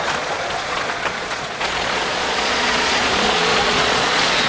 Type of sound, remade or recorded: remade